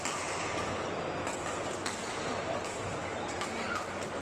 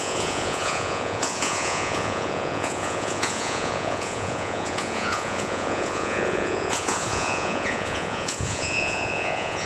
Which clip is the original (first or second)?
first